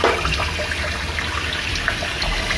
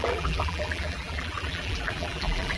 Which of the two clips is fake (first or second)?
second